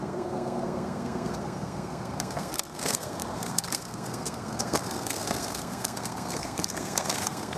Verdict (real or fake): fake